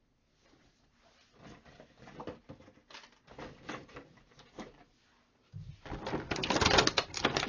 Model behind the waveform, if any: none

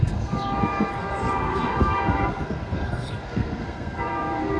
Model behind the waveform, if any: codec, SNAC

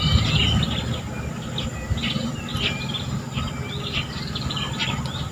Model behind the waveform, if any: none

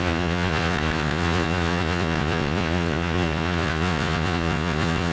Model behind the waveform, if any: vocoder, Vocos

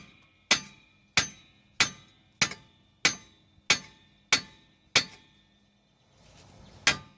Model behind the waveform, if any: none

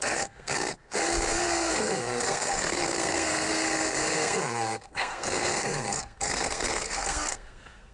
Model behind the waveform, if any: codec, SNAC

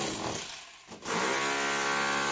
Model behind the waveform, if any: none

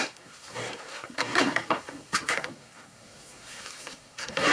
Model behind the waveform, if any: codec, SNAC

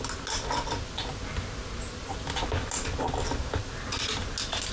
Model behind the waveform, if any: none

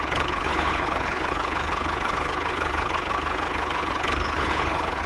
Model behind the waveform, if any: codec, HILCodec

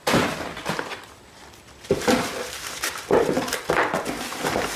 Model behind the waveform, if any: vocoder, BigVGAN v2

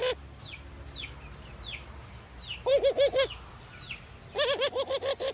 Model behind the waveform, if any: none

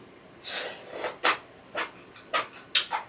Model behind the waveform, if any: none